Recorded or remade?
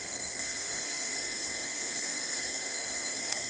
remade